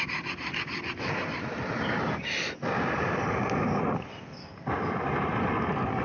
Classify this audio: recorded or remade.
recorded